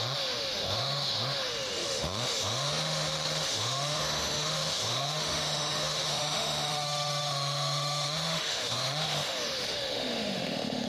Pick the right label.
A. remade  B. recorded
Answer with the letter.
A